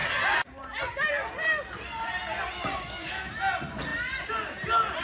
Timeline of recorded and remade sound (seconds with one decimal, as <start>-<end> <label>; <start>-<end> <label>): 0.0-2.7 recorded; 2.7-3.3 remade; 3.3-5.0 recorded